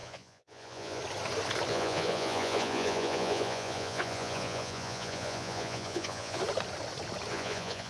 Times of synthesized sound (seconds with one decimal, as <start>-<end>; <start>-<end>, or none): 0.0-1.0; 1.7-6.4; 7.3-7.9